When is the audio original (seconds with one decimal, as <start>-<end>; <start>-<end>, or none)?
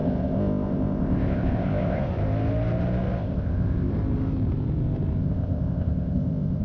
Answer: 2.0-3.2; 3.9-5.2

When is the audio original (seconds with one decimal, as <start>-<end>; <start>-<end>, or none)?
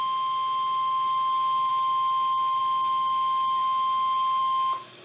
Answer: 0.0-5.0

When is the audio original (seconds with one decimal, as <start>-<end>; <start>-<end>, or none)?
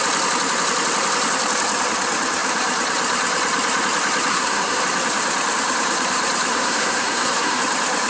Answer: 0.0-4.3; 4.8-6.5; 7.6-8.1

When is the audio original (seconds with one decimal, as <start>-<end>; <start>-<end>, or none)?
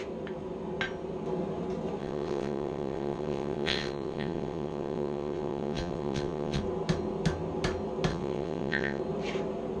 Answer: 0.0-2.0; 6.6-8.1; 9.0-9.8